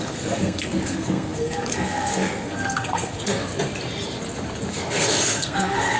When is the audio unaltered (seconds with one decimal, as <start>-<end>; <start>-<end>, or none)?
3.5-4.7